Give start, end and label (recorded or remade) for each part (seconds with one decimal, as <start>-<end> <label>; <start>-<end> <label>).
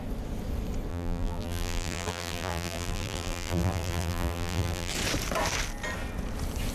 0.0-0.9 recorded; 0.9-4.9 remade; 4.9-6.7 recorded